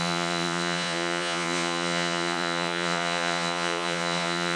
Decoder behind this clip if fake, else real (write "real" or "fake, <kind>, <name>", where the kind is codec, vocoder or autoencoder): fake, vocoder, Vocos